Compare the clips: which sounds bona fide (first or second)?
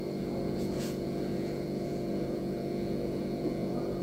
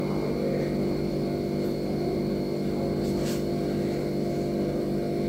second